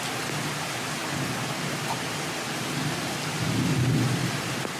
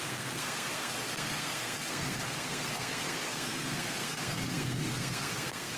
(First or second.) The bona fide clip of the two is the first